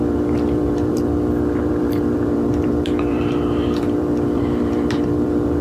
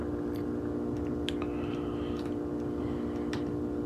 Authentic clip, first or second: second